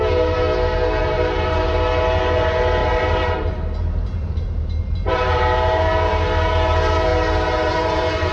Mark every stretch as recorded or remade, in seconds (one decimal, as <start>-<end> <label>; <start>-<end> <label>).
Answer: 0.0-2.8 recorded; 2.8-5.4 remade; 5.4-8.3 recorded